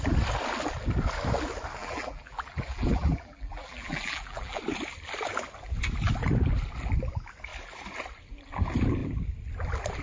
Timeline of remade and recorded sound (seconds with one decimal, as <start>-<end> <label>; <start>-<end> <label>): 0.0-1.8 recorded; 1.8-4.6 remade; 4.6-10.0 recorded